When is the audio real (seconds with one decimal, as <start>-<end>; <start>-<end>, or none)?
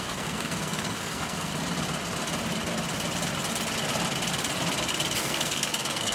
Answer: 1.5-5.2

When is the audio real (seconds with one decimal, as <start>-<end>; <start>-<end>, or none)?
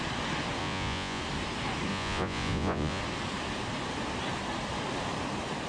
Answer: 0.0-0.6; 1.2-1.9; 3.0-5.7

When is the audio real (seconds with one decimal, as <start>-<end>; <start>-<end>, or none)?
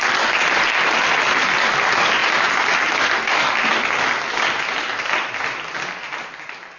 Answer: 0.0-6.8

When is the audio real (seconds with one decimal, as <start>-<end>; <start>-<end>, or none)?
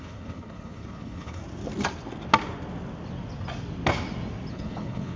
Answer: 1.4-4.5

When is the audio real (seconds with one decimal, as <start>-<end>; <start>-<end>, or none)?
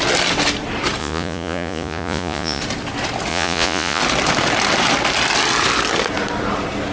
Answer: 0.0-1.0; 2.6-3.3; 4.0-6.9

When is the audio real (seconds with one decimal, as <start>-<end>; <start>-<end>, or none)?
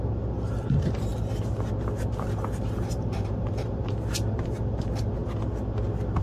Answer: 1.1-2.6; 5.2-6.2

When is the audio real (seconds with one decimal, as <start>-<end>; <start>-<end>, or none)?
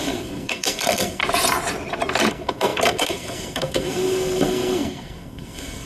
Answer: 1.2-2.3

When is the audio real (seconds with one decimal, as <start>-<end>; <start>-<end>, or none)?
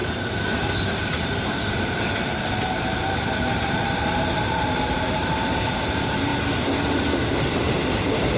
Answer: 6.3-7.3